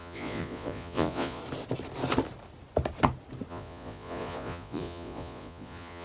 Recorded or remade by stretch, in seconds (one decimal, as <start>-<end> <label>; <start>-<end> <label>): 0.0-1.4 remade; 1.4-3.5 recorded; 3.5-6.0 remade